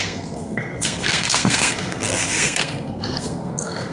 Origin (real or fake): fake